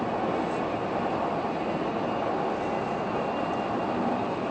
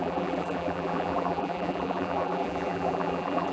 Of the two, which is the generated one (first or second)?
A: second